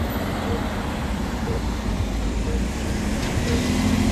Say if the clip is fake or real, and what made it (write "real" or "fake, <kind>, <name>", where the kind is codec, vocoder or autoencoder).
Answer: fake, vocoder, BigVGAN v2